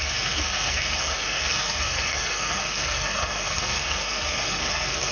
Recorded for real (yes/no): no